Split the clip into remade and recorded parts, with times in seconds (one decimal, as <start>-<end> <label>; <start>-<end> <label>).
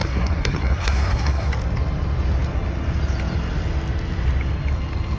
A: 0.0-1.5 remade; 1.5-5.2 recorded